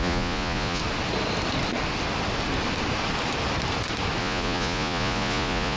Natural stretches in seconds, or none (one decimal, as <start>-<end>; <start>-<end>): 0.8-4.2